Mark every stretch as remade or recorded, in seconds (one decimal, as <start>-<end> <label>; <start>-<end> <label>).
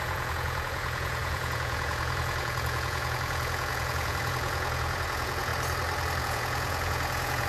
0.0-5.5 remade; 5.5-6.2 recorded; 6.2-7.5 remade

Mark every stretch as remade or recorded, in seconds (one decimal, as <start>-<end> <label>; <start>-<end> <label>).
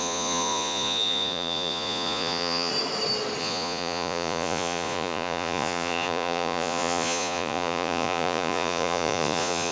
0.0-2.7 remade; 2.7-3.4 recorded; 3.4-9.7 remade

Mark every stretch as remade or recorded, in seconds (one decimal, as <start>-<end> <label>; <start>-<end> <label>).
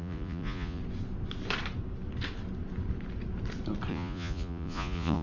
0.0-0.8 remade; 0.8-3.9 recorded; 3.9-5.2 remade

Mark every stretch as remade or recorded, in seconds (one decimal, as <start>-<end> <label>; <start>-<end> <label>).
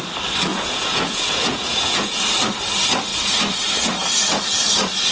0.0-0.5 recorded; 0.5-2.2 remade; 2.2-5.1 recorded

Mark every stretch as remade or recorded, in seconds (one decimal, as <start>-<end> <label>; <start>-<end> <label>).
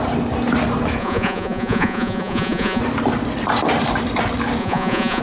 0.0-1.0 recorded; 1.0-2.8 remade; 2.8-4.6 recorded; 4.6-5.2 remade